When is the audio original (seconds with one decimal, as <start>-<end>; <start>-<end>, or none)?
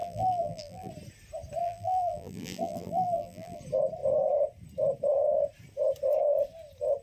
0.9-1.6; 3.6-7.0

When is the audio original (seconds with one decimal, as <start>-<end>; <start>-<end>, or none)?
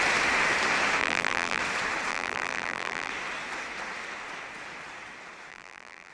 0.0-1.0; 1.6-2.1; 3.1-5.5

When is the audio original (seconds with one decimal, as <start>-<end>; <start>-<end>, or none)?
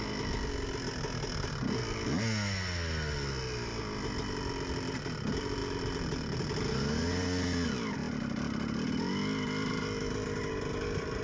0.0-11.2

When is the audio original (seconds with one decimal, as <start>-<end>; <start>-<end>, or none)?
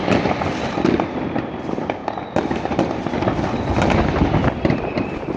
0.0-5.4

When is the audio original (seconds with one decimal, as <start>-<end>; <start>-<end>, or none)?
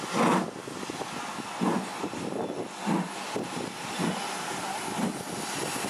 0.0-5.9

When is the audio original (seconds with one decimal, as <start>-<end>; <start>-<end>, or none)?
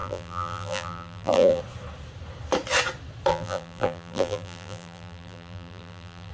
1.6-3.3